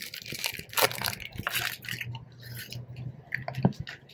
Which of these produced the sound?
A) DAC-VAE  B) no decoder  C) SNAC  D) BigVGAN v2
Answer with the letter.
B